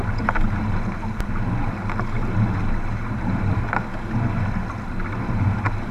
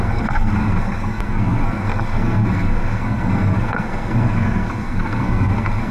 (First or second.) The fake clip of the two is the second